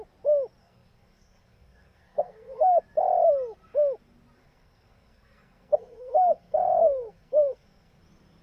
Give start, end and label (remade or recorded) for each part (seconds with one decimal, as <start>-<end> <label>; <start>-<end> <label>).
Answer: 0.0-0.6 recorded; 0.6-2.8 remade; 2.8-4.4 recorded; 4.4-8.0 remade; 8.0-8.4 recorded